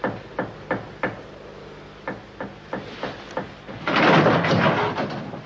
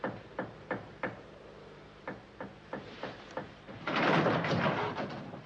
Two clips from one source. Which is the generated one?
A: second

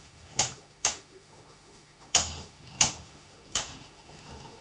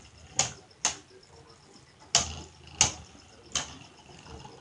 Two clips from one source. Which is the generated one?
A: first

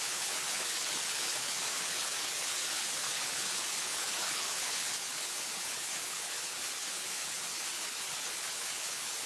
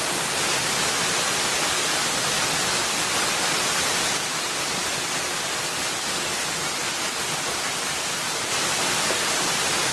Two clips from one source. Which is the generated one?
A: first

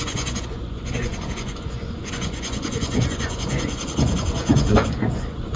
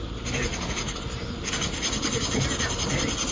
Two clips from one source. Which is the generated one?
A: first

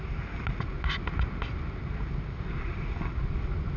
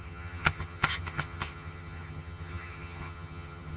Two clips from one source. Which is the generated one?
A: second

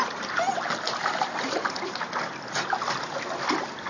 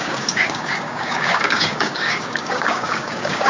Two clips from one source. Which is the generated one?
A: second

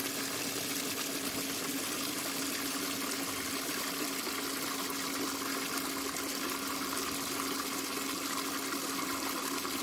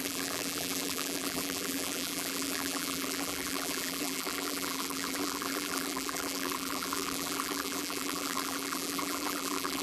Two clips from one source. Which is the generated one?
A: second